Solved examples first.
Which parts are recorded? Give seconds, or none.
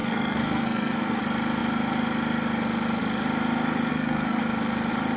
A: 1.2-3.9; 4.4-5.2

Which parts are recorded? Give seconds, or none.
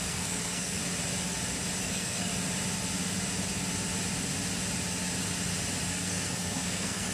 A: 0.8-1.8; 2.3-5.9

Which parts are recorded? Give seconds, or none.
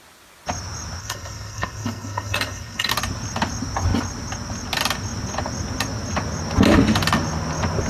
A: 0.0-1.0; 2.9-7.9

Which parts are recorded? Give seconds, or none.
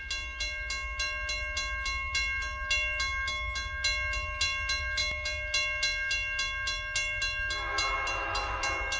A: 0.0-9.0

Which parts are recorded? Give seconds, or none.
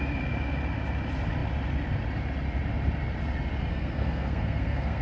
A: 0.0-3.7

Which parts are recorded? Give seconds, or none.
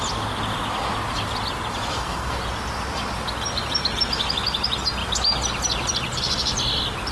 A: 0.0-1.9; 2.4-7.1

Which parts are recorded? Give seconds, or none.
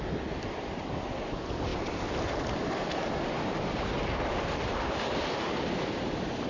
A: 0.0-6.5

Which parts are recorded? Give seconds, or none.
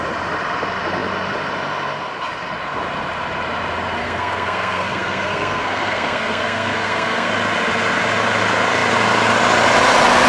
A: 0.0-4.0; 7.3-10.3